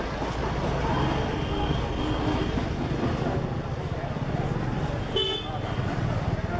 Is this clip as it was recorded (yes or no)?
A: yes